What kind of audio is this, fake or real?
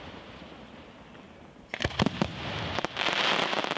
real